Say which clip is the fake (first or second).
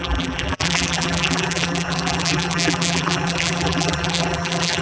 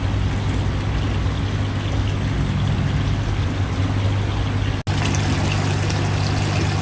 first